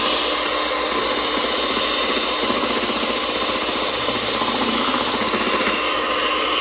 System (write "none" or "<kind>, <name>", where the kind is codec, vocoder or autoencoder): none